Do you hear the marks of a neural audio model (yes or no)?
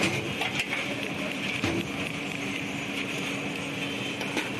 no